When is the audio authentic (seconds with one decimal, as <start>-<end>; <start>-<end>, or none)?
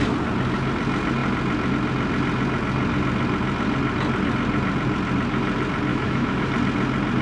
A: 0.0-5.9; 6.5-7.2